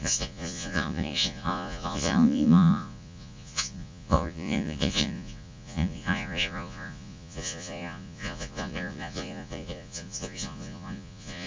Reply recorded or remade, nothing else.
remade